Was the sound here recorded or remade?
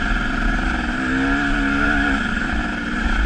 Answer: recorded